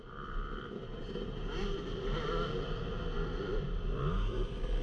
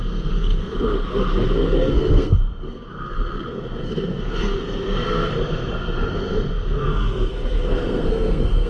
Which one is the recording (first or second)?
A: first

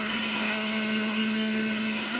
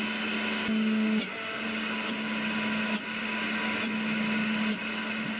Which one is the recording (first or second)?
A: second